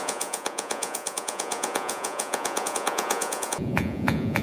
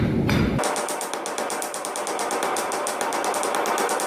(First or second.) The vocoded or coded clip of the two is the first